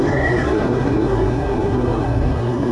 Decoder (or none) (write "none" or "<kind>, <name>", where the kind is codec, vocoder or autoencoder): codec, SNAC